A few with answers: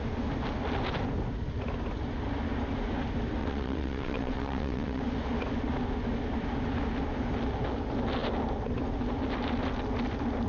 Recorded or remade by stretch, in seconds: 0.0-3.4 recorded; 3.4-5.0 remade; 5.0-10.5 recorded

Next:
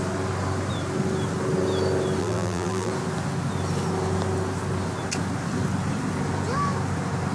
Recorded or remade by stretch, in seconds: 0.0-2.2 recorded; 2.2-2.9 remade; 2.9-7.3 recorded

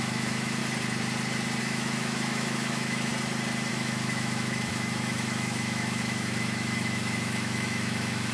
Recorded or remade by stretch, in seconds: 0.0-0.6 remade; 0.6-1.6 recorded; 1.6-3.1 remade; 3.1-3.7 recorded; 3.7-8.3 remade